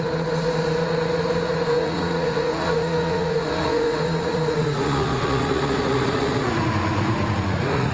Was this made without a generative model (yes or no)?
no